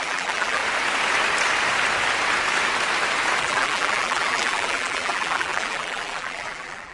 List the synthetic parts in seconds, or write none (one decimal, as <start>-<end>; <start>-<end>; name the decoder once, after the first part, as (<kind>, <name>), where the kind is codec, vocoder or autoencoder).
0.0-0.6 (vocoder, BigVGAN v2); 3.4-6.9